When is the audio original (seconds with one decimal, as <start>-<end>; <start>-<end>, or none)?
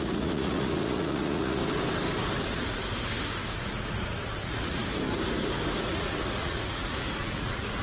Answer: 1.6-2.4; 2.8-3.5; 4.8-5.9